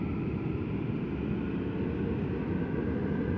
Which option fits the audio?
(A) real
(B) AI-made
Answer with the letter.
A